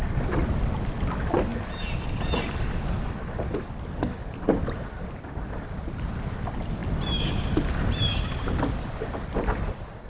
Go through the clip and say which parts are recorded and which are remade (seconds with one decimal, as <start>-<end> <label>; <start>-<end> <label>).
0.0-10.1 recorded